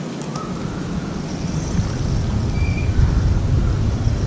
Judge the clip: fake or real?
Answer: real